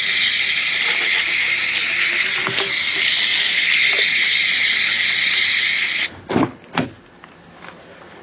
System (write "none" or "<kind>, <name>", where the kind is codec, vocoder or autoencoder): none